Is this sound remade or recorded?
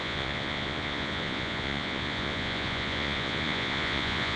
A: remade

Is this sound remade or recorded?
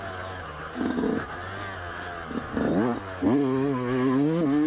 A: recorded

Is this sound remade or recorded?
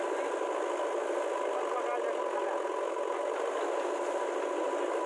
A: recorded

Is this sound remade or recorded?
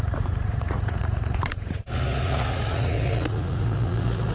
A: remade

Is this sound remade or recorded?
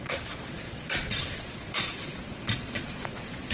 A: remade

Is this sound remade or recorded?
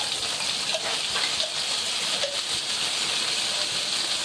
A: recorded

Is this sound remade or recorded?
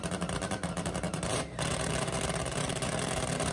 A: remade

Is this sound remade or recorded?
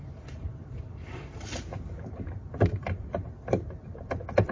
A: remade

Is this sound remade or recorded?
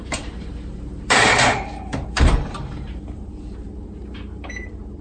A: remade